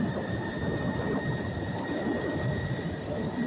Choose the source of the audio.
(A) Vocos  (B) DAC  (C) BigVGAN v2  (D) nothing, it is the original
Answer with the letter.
C